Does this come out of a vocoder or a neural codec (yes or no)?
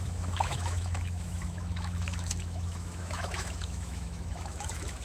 yes